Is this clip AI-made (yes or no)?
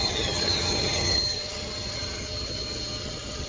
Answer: yes